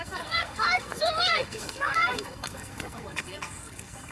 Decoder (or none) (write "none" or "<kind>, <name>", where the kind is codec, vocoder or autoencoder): codec, SNAC